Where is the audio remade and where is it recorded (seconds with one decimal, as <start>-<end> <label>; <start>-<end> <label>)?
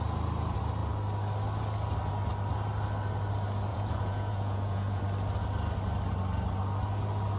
0.0-3.7 recorded; 3.7-5.0 remade; 5.0-7.4 recorded